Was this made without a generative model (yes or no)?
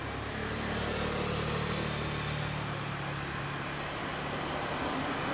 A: yes